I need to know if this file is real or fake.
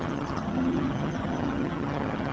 fake